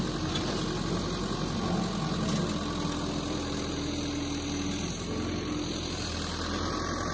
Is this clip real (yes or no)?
yes